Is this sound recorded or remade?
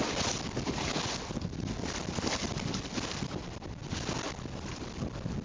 recorded